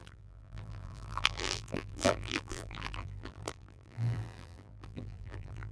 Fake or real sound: fake